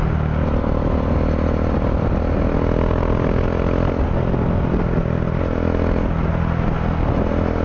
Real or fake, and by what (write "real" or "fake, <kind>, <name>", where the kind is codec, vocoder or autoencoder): real